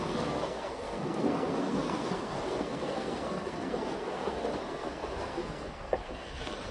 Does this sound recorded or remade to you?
remade